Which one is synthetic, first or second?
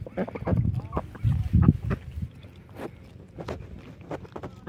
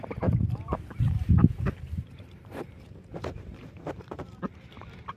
second